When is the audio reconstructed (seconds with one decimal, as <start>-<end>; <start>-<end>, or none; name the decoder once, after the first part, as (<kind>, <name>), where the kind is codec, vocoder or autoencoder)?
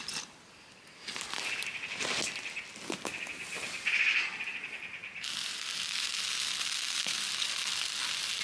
none